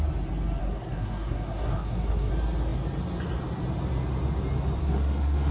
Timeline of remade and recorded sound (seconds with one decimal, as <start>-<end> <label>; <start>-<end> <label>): 0.0-0.6 recorded; 0.6-2.3 remade; 2.3-4.8 recorded; 4.8-5.5 remade